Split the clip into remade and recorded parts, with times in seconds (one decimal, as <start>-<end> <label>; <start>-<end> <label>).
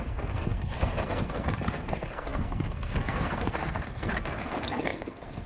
0.0-5.5 remade